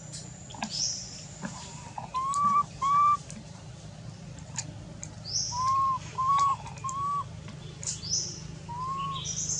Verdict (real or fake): real